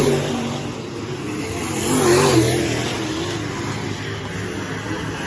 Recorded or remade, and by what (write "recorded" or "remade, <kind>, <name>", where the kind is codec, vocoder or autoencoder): recorded